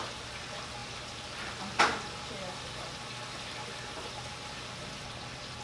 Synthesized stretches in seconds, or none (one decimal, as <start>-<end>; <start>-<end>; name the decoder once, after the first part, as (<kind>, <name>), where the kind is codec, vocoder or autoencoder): none